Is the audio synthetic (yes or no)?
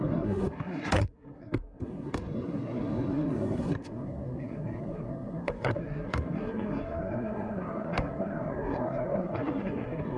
yes